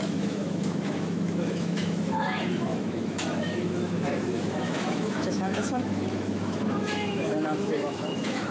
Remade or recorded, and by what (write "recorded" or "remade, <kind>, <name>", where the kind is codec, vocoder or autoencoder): remade, autoencoder, DAC-VAE